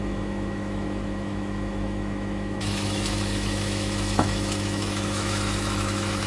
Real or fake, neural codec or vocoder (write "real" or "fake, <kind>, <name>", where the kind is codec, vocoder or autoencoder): fake, autoencoder, DAC-VAE